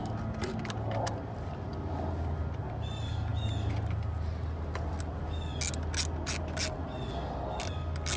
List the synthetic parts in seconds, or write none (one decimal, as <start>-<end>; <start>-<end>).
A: none